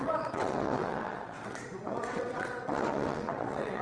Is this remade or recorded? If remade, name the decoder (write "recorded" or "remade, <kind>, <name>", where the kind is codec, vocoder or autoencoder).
remade, vocoder, WaveNeXt